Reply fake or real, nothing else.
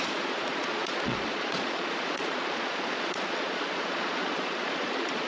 fake